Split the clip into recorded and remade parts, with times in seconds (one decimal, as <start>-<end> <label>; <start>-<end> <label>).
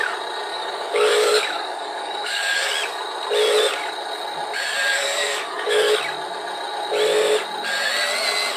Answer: 0.0-0.5 recorded; 0.5-2.7 remade; 2.7-4.9 recorded; 4.9-6.0 remade; 6.0-8.6 recorded